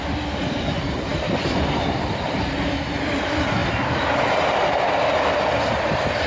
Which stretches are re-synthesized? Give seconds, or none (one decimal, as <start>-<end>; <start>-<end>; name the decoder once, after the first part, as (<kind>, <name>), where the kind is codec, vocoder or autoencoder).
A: 3.6-5.2 (vocoder, BigVGAN v2)